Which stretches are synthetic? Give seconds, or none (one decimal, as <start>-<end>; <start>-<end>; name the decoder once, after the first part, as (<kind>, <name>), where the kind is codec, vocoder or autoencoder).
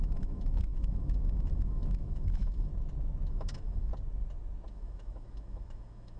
0.0-2.7 (autoencoder, DAC-VAE); 3.3-3.9; 4.7-6.2